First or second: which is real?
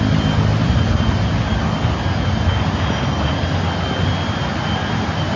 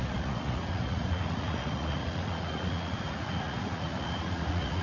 first